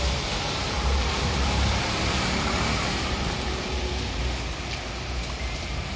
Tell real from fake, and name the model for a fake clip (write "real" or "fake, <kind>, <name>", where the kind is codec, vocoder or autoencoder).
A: fake, vocoder, BigVGAN v2